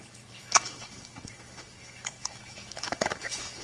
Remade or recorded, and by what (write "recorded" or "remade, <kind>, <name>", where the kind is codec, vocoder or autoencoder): remade, autoencoder, DAC-VAE